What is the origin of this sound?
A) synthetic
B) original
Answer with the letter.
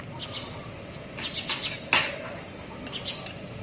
B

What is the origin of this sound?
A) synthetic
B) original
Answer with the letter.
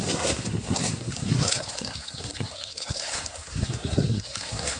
A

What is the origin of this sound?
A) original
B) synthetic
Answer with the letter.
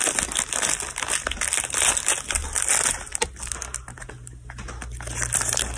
A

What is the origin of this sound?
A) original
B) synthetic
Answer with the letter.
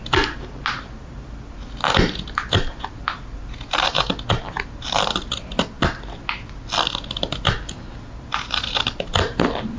A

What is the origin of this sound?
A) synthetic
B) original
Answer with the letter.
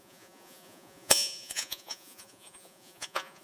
A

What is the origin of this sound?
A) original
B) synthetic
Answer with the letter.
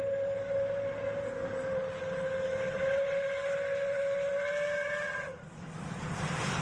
A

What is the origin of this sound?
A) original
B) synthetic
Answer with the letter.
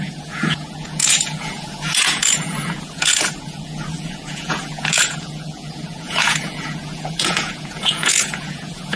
B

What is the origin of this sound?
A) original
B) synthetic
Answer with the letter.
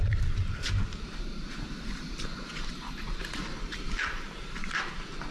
B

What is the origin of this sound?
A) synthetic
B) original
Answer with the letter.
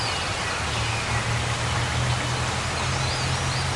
B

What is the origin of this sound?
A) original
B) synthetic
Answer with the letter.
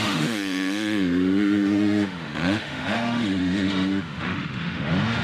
B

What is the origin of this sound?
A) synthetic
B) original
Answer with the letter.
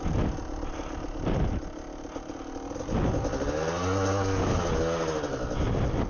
B